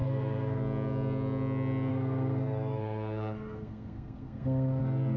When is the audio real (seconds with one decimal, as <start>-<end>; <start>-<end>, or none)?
0.6-1.9; 4.8-5.2